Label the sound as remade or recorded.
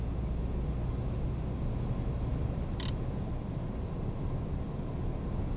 recorded